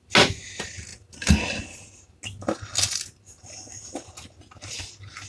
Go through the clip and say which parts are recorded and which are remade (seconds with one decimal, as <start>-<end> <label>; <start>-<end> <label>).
0.0-5.3 recorded